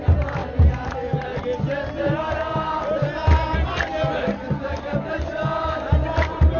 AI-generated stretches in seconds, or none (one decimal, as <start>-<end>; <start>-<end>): none